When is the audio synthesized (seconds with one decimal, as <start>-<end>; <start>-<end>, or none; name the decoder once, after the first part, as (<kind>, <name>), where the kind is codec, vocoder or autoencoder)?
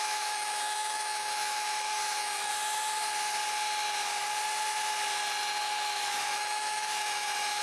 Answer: 0.0-2.5 (autoencoder, DAC-VAE); 5.6-7.6